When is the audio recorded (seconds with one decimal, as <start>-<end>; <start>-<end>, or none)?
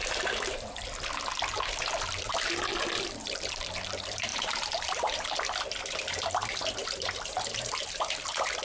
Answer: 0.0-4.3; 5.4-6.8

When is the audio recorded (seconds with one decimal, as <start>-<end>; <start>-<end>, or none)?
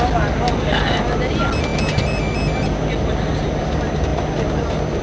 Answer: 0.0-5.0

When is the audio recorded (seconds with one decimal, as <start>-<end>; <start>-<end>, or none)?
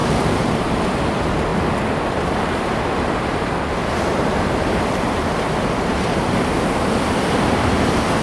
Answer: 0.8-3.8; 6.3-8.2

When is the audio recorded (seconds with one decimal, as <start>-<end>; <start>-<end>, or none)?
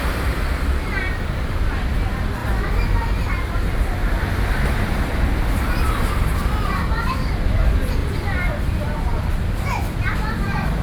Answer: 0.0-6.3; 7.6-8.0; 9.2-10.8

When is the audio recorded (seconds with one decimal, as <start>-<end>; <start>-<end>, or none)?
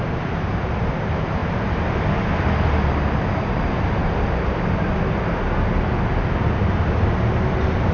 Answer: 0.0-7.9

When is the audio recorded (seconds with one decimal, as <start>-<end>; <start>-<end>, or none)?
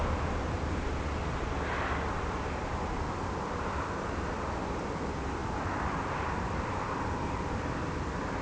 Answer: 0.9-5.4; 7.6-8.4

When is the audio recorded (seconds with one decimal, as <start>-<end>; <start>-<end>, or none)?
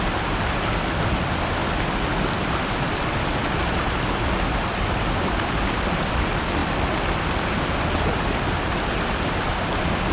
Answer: 0.0-1.6; 6.1-10.1